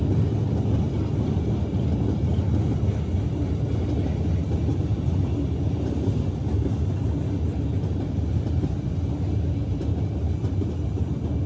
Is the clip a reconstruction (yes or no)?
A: no